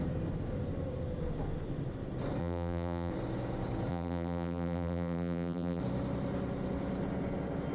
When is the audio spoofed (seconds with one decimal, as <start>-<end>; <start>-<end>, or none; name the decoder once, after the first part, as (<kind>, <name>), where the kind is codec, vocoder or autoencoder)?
2.4-3.1 (vocoder, BigVGAN v2); 3.9-5.8